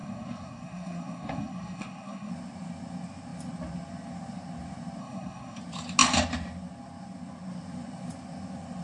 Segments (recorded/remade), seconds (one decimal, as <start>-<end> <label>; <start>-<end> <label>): 0.0-2.3 remade; 2.3-5.0 recorded; 5.0-5.6 remade; 5.6-8.8 recorded